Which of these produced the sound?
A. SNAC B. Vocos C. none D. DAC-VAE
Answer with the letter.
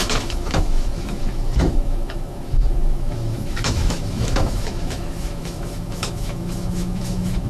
D